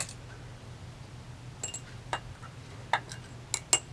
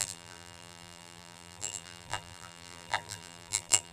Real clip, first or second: first